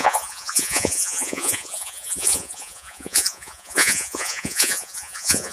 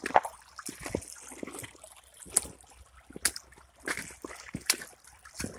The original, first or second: second